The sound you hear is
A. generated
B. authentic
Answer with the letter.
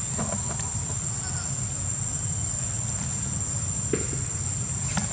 B